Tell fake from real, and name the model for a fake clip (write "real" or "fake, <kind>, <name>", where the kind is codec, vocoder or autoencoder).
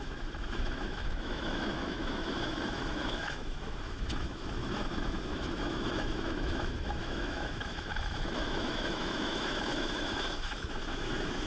fake, autoencoder, DAC-VAE